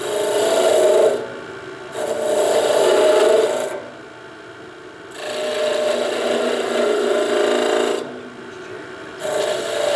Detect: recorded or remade recorded